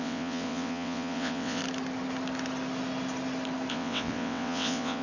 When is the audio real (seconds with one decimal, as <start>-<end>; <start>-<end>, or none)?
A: 1.6-3.7